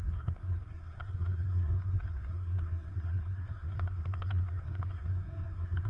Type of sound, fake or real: fake